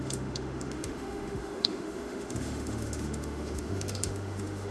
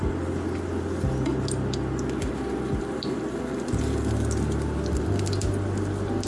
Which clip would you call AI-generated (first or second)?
first